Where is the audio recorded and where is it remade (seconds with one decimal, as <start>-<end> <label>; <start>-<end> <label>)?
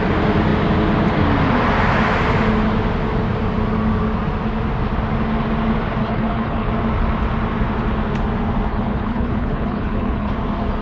0.0-6.0 recorded; 6.0-6.7 remade; 6.7-8.7 recorded; 8.7-10.3 remade; 10.3-10.8 recorded